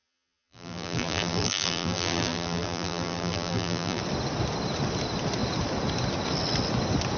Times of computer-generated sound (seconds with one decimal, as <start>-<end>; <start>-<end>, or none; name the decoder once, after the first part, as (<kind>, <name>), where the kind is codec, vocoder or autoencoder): 0.0-4.0 (vocoder, BigVGAN v2)